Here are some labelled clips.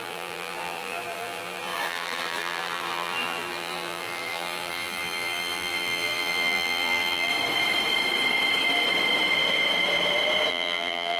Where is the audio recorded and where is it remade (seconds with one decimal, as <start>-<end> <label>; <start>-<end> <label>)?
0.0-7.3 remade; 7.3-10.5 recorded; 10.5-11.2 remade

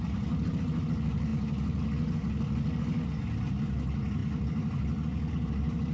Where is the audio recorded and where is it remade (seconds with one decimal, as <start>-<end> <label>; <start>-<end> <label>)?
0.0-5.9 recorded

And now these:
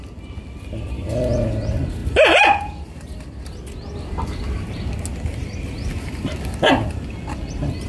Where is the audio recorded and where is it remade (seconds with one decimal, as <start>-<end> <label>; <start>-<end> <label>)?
0.0-7.9 recorded

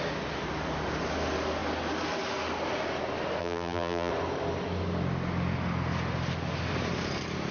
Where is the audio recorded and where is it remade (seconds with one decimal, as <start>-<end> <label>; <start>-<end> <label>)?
0.0-3.4 recorded; 3.4-4.1 remade; 4.1-7.5 recorded